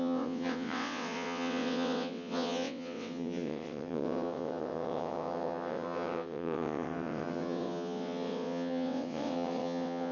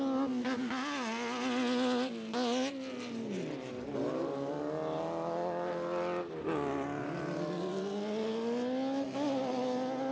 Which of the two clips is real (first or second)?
second